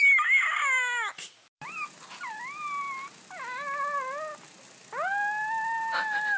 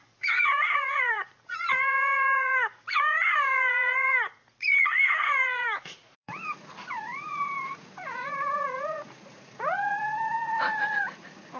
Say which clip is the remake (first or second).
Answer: second